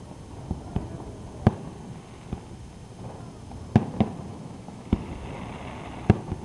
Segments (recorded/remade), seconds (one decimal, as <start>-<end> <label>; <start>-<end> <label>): 0.0-4.3 recorded; 4.3-5.1 remade; 5.1-6.4 recorded